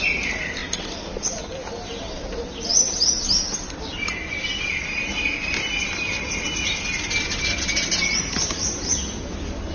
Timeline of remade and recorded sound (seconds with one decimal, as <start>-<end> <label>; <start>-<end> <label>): 0.0-0.6 recorded; 0.6-1.3 remade; 1.3-2.7 recorded; 2.7-5.2 remade; 5.2-9.7 recorded